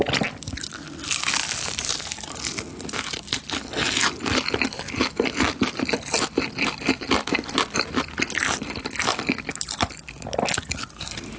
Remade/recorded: recorded